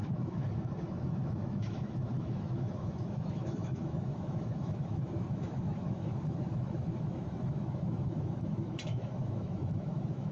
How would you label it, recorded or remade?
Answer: remade